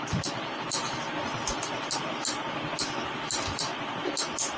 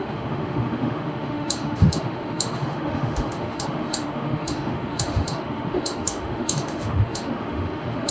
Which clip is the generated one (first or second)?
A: second